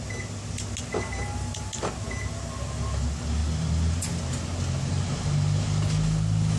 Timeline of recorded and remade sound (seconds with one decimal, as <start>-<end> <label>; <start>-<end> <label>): 0.0-6.6 recorded